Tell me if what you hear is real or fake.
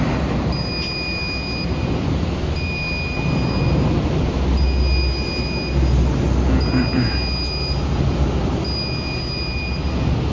real